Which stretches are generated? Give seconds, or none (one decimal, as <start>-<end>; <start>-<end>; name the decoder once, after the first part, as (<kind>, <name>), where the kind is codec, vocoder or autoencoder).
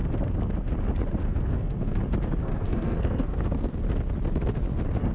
1.2-2.0 (codec, SNAC); 2.4-3.7